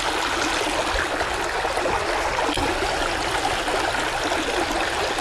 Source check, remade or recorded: recorded